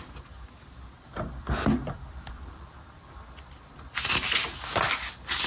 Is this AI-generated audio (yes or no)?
no